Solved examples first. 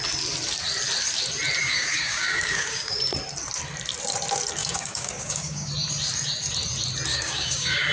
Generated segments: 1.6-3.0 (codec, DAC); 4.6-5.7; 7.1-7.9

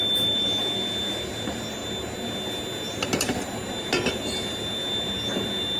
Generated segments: none

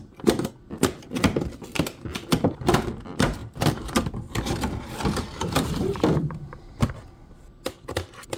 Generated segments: 3.4-7.4 (vocoder, BigVGAN v2)

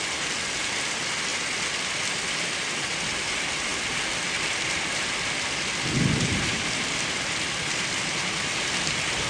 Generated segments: none

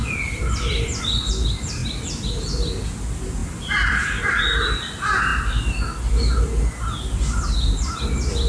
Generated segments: 0.0-1.3 (vocoder, BigVGAN v2); 1.8-2.8

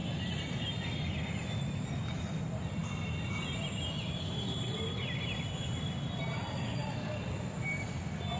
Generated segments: none

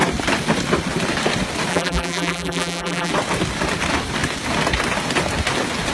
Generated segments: 1.7-3.1 (vocoder, BigVGAN v2)

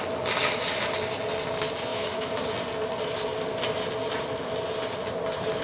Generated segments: 1.9-2.5 (autoencoder, DAC-VAE)